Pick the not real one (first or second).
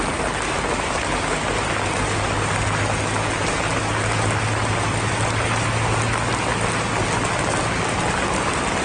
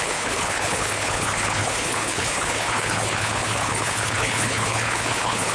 second